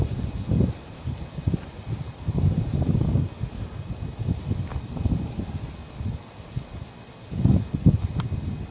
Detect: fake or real real